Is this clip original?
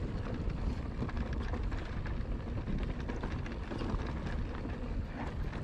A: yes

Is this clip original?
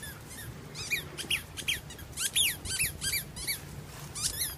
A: yes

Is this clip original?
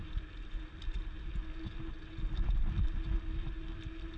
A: yes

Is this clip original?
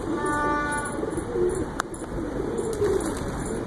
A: no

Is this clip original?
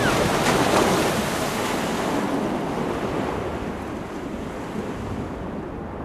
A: yes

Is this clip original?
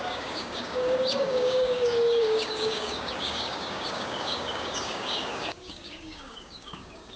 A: no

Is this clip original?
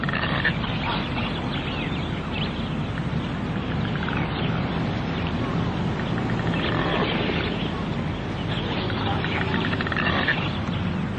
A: yes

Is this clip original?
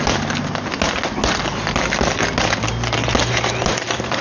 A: yes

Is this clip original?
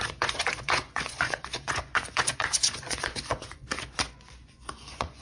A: no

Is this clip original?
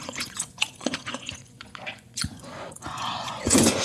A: no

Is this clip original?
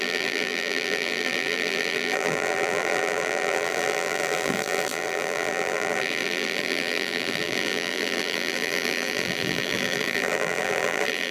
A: no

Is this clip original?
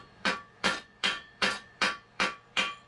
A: no